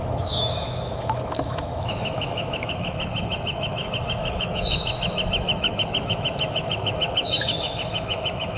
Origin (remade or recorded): remade